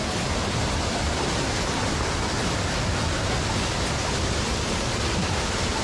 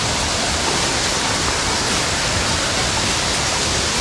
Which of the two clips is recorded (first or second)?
first